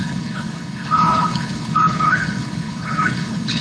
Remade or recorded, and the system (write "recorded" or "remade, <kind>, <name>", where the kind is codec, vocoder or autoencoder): remade, codec, HILCodec